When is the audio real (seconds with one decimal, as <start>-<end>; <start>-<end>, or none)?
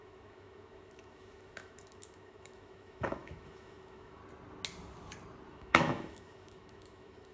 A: 4.2-5.5